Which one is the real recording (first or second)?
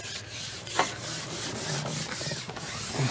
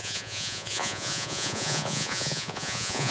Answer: first